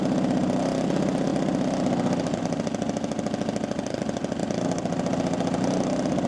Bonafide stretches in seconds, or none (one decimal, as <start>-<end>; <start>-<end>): 0.0-6.3